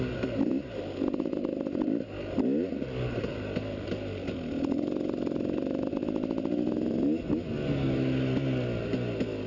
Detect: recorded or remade recorded